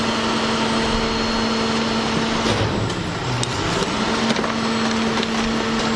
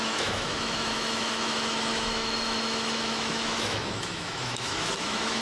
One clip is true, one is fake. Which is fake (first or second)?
second